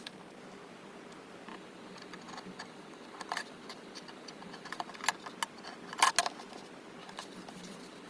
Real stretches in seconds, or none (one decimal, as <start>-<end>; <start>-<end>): 0.0-1.5; 4.9-7.0